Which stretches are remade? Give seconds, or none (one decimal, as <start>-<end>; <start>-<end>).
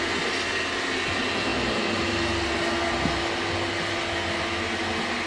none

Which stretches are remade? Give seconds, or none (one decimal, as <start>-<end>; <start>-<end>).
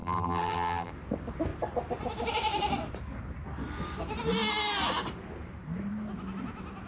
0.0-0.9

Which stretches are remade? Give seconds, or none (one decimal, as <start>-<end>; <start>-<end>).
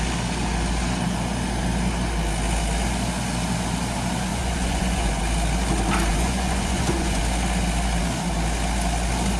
4.3-5.2; 6.1-7.2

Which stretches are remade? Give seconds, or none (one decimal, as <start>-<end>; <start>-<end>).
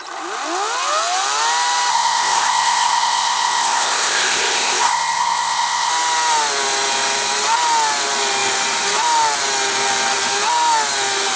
1.9-5.9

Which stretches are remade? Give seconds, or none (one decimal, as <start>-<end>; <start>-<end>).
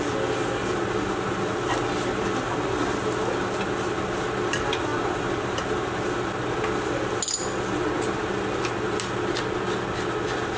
none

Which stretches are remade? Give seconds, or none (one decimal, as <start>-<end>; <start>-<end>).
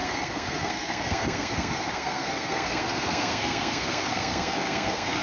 0.0-5.2